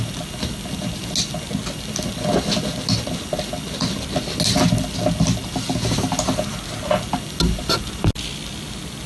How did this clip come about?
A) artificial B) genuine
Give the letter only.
B